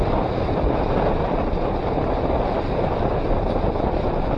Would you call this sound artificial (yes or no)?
no